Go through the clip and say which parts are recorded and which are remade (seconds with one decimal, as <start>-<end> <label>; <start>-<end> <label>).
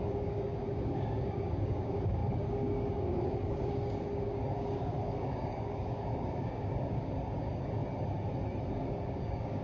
0.0-7.8 remade; 7.8-8.7 recorded; 8.7-9.6 remade